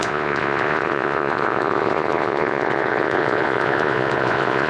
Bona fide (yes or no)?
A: no